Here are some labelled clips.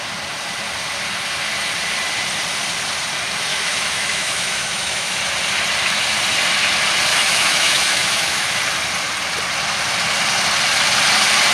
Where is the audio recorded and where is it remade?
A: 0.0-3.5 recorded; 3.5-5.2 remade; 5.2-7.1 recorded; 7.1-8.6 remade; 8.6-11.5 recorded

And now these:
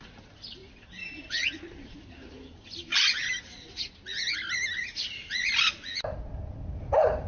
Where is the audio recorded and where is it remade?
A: 0.0-7.3 recorded

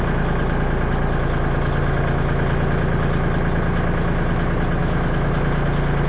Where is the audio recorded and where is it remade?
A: 0.0-4.8 recorded; 4.8-5.3 remade; 5.3-6.1 recorded

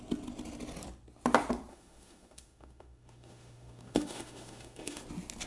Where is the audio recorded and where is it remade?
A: 0.0-1.7 recorded; 1.7-5.0 remade; 5.0-5.5 recorded